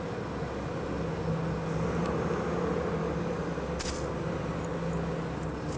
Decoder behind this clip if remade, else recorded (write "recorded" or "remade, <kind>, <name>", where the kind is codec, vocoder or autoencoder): recorded